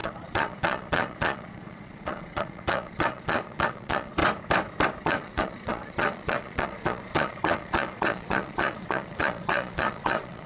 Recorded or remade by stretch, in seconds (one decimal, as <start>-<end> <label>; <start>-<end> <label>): 0.0-4.2 remade; 4.2-5.0 recorded; 5.0-10.5 remade